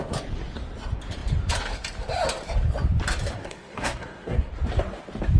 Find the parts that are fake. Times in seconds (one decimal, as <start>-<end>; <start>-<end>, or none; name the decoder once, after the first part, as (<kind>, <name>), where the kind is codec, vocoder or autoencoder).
3.4-4.5 (codec, SNAC)